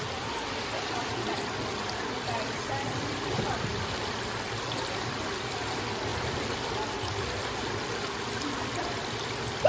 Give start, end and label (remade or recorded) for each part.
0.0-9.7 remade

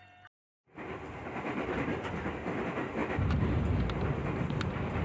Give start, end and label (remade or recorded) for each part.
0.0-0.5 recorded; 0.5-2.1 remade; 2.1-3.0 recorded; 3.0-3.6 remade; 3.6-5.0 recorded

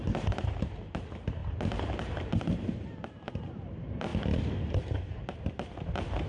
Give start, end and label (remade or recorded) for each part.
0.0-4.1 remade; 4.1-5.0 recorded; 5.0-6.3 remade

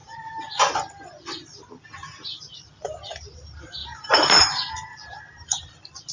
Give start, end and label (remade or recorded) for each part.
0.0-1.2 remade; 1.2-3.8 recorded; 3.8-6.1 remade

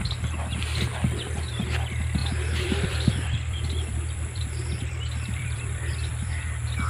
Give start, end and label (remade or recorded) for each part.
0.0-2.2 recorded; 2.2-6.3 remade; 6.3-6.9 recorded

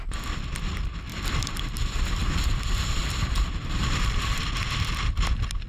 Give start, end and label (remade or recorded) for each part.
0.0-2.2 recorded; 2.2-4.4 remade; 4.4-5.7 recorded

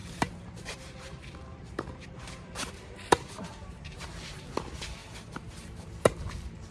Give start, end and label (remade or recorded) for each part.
0.0-4.0 remade; 4.0-5.0 recorded; 5.0-6.1 remade; 6.1-6.7 recorded